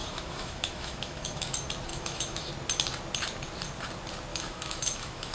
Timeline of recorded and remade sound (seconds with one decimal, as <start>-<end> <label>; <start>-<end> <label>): 0.0-1.5 remade; 1.5-1.9 recorded; 1.9-2.5 remade; 2.5-4.3 recorded; 4.3-5.3 remade